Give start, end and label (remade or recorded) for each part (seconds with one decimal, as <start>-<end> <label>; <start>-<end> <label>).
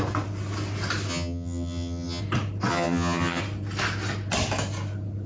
0.0-1.1 recorded; 1.1-2.2 remade; 2.2-2.7 recorded; 2.7-3.4 remade; 3.4-5.3 recorded